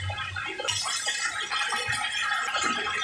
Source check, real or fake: real